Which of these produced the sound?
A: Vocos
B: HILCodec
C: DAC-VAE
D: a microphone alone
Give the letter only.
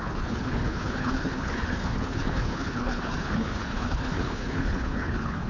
B